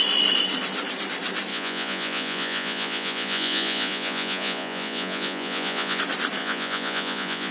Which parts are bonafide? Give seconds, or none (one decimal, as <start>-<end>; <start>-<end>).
0.0-1.5; 6.0-6.4